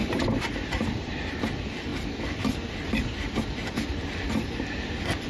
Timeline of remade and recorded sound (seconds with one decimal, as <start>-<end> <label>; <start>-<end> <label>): 0.0-1.3 remade; 1.3-5.3 recorded